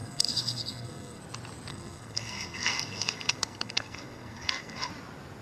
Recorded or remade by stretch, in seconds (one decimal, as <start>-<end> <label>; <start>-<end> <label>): 0.0-1.2 remade; 1.2-1.7 recorded; 1.7-4.9 remade; 4.9-5.4 recorded